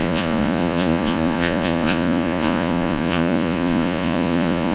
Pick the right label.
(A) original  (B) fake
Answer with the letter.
B